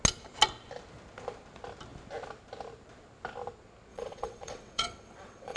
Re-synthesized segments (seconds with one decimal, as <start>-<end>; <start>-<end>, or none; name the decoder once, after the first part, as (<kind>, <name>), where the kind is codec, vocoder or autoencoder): 3.9-5.6 (vocoder, WaveNeXt)